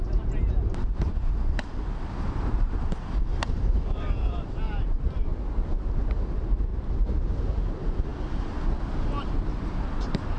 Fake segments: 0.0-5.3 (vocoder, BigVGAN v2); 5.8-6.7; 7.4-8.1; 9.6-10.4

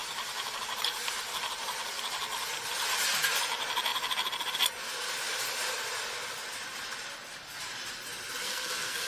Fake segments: 8.4-9.1 (codec, SNAC)